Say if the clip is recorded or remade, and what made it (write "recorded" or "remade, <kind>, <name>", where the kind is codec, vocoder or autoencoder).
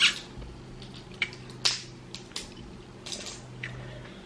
recorded